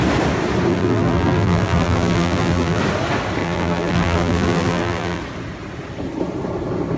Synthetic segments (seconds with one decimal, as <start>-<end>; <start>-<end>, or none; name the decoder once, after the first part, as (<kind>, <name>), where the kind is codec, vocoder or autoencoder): 0.7-2.8 (vocoder, BigVGAN v2); 3.4-5.2